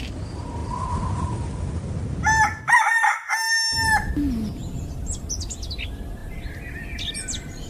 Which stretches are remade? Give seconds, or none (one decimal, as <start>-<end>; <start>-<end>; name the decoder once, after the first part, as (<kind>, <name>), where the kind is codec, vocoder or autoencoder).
none